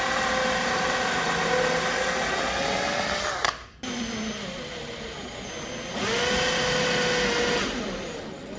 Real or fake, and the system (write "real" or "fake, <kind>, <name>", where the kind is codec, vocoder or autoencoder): real